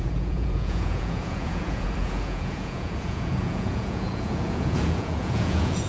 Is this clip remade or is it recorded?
remade